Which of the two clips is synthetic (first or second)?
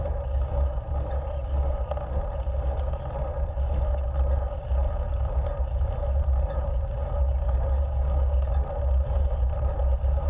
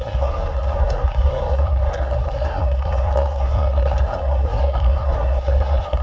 second